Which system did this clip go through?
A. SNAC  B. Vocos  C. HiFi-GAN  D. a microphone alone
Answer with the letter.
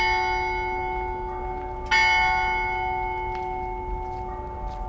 D